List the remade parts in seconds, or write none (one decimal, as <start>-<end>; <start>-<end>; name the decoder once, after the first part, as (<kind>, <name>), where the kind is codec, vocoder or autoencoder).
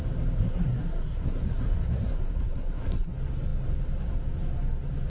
0.4-3.1 (codec, SNAC)